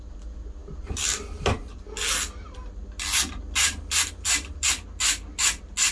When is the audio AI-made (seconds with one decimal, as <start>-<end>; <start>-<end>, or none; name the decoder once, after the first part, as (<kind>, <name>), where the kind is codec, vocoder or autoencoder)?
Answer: none